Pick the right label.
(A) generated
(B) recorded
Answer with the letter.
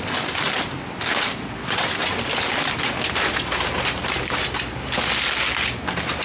B